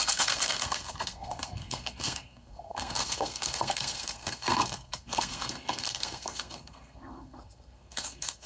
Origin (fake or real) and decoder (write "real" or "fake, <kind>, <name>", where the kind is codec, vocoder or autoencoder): fake, codec, SNAC